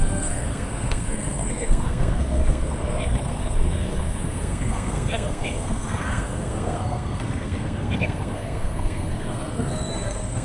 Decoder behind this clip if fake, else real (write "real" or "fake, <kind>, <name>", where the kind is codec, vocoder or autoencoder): fake, codec, SNAC